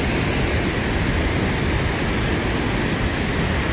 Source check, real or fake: real